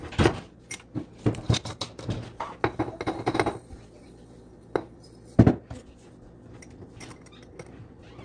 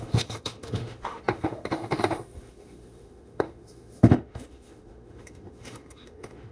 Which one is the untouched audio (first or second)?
first